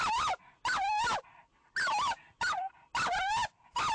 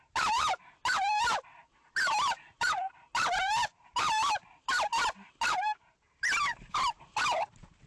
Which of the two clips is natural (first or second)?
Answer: first